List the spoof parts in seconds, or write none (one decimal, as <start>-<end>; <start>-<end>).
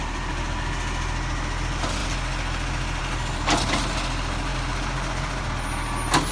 none